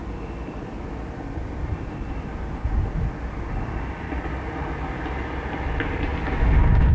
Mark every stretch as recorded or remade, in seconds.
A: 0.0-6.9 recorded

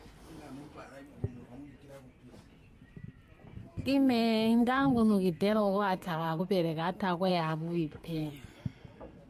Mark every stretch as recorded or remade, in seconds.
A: 0.0-3.6 recorded; 3.6-6.4 remade; 6.4-7.3 recorded; 7.3-8.3 remade; 8.3-9.3 recorded

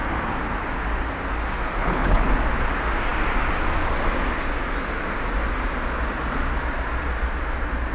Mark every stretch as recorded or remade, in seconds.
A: 0.0-1.8 recorded; 1.8-2.3 remade; 2.3-7.9 recorded

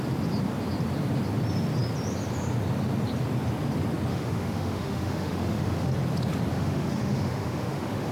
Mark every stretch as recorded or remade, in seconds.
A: 0.0-4.1 recorded; 4.1-5.9 remade; 5.9-6.5 recorded; 6.5-8.1 remade